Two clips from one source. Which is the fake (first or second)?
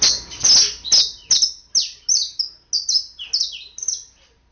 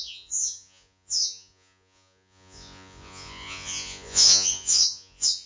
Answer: second